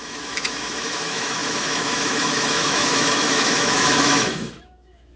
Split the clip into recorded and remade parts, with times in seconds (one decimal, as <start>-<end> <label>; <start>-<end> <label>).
0.0-5.2 remade